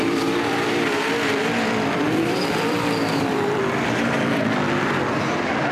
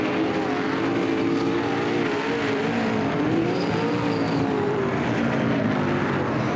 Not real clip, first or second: first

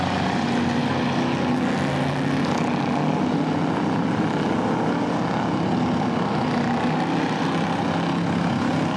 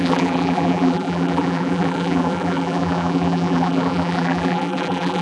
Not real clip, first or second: second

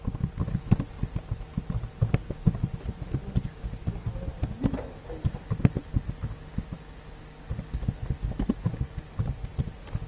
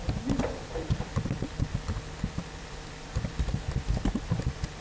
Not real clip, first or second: second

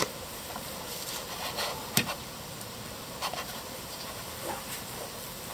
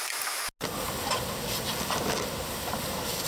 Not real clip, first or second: first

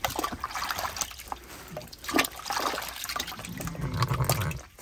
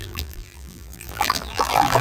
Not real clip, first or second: second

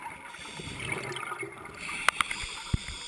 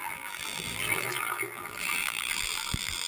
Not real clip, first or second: second